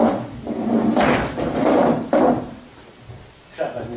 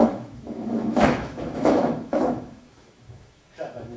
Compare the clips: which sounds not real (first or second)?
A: second